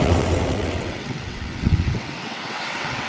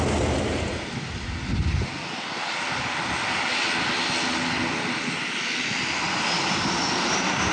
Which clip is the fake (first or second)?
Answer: first